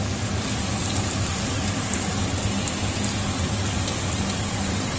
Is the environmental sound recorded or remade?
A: recorded